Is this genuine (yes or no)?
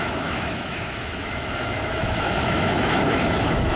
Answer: no